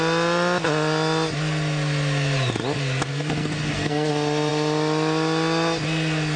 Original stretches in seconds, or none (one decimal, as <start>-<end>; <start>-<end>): 0.0-3.1; 4.1-6.4